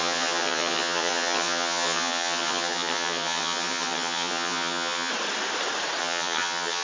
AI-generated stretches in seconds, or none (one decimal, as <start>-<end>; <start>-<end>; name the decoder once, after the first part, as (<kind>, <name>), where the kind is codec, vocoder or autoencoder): 0.0-5.1 (vocoder, HiFi-GAN); 6.0-6.8